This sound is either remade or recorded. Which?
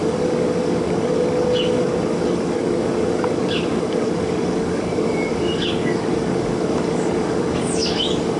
remade